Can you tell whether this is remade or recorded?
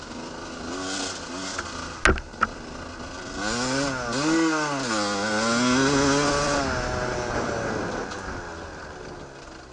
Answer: recorded